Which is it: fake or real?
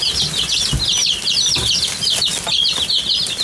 real